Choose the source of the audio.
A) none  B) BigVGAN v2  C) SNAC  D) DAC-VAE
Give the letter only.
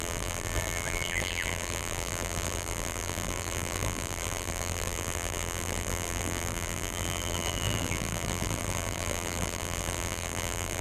B